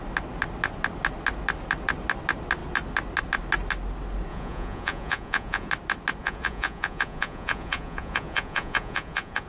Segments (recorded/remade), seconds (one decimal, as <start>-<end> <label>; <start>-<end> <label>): 0.0-4.3 recorded; 4.3-5.7 remade; 5.7-6.2 recorded; 6.2-9.5 remade